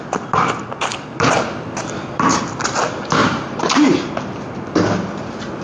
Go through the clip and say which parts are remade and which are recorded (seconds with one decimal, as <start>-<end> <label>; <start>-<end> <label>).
0.0-3.2 recorded; 3.2-4.1 remade; 4.1-5.6 recorded